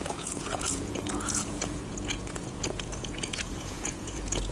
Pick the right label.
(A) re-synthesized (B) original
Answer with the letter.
A